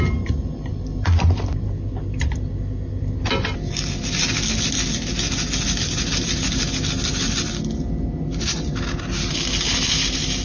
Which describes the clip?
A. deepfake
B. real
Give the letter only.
B